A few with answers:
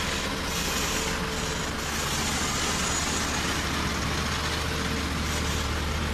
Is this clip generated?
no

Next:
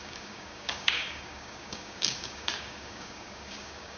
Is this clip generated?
yes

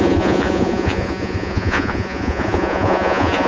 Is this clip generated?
yes